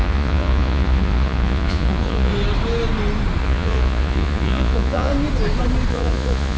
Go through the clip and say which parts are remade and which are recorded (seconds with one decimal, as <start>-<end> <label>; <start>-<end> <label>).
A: 0.0-2.3 remade; 2.3-3.4 recorded; 3.4-5.1 remade; 5.1-5.9 recorded; 5.9-6.6 remade